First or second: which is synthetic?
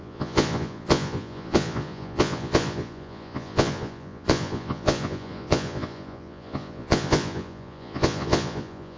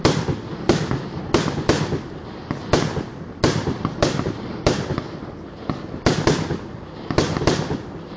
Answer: first